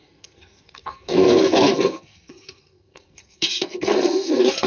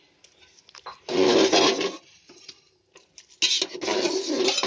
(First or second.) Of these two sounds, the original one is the second